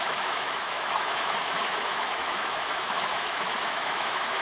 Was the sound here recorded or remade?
remade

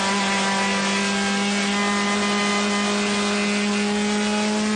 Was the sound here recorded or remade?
recorded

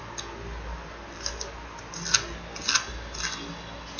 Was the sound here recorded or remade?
recorded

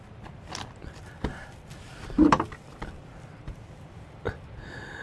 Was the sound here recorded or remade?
remade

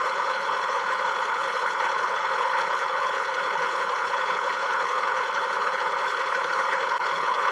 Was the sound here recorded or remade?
remade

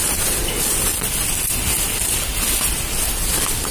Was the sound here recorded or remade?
recorded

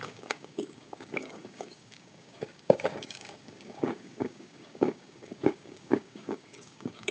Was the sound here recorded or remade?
remade